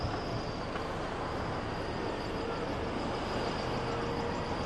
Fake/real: real